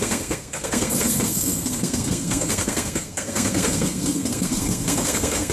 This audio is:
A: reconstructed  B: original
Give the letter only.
A